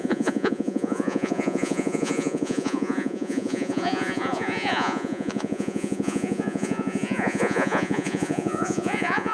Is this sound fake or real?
fake